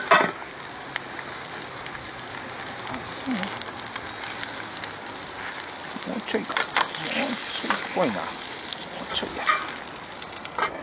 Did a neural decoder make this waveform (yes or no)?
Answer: no